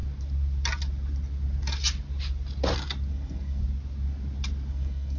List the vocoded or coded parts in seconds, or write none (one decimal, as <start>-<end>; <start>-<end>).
3.1-3.6; 4.7-5.2